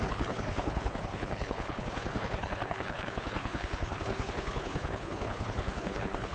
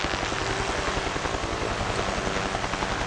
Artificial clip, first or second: first